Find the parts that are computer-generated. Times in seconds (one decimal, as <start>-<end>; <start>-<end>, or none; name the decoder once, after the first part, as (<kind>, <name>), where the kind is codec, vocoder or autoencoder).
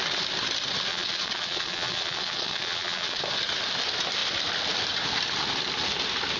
0.9-3.2 (vocoder, WaveNeXt)